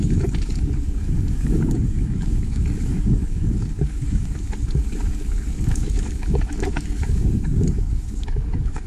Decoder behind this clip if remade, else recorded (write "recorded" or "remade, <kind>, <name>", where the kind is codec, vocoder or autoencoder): remade, codec, DAC